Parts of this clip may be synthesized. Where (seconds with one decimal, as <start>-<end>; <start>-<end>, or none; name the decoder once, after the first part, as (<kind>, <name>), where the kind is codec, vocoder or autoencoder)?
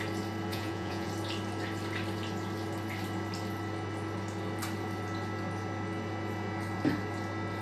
0.5-1.1 (vocoder, Vocos)